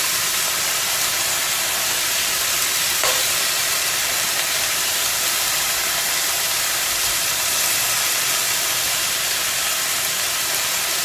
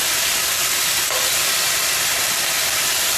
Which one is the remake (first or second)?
first